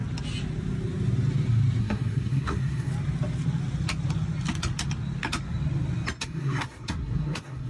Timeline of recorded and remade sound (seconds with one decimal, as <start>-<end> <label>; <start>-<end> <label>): 0.0-1.8 recorded; 1.8-2.9 remade; 2.9-6.2 recorded; 6.2-7.7 remade